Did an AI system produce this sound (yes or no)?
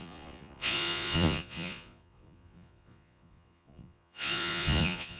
yes